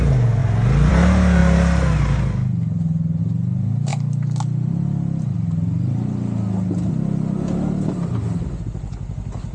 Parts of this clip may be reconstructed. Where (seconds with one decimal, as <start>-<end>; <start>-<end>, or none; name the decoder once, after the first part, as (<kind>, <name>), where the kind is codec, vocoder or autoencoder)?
none